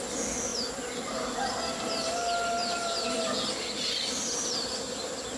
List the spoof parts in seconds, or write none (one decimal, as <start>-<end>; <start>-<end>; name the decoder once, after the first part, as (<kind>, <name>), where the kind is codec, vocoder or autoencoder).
0.5-1.1 (vocoder, BigVGAN v2)